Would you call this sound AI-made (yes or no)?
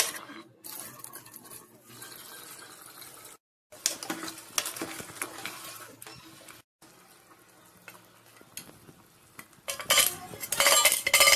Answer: no